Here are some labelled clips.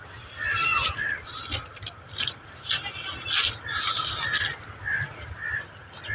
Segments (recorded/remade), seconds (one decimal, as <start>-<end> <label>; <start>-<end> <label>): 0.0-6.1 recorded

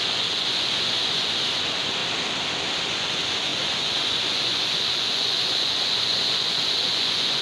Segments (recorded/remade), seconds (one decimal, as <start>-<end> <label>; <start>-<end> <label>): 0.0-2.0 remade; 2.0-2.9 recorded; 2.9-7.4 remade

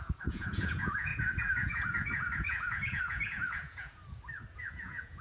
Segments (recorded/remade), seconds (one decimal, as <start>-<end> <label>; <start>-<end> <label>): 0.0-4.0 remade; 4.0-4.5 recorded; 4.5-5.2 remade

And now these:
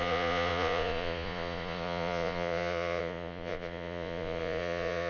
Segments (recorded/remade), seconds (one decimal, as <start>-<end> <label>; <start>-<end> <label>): 0.0-5.1 remade

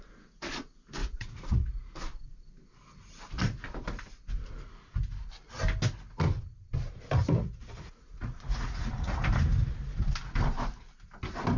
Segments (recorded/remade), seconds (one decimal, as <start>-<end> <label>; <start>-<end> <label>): 0.0-1.0 recorded; 1.0-1.9 remade; 1.9-7.4 recorded; 7.4-9.2 remade; 9.2-11.6 recorded